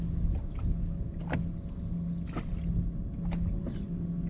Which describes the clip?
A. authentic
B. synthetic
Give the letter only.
A